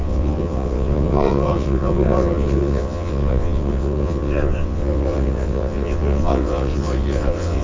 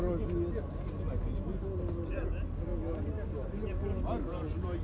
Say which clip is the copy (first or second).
first